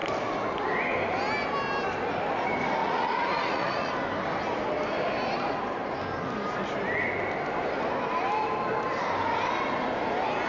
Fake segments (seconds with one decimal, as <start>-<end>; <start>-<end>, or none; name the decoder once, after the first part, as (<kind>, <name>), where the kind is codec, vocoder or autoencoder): 2.8-3.9 (vocoder, Vocos)